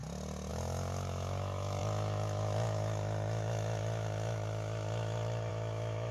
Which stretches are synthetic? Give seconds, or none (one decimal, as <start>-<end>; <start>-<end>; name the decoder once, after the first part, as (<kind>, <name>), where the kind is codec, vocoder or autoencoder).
0.5-6.1 (autoencoder, DAC-VAE)